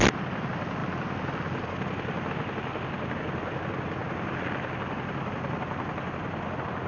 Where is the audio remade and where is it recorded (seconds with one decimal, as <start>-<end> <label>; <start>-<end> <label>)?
0.0-6.9 recorded